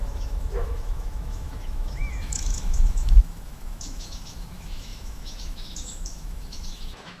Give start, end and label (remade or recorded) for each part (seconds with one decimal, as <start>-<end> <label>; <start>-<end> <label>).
0.0-7.2 remade